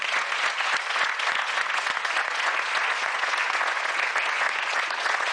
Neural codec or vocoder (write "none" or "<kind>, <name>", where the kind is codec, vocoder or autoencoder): vocoder, Vocos